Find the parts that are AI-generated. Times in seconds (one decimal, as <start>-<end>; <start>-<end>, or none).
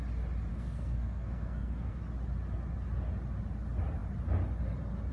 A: 0.5-2.0